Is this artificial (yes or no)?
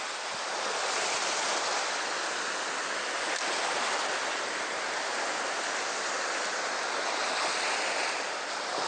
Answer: no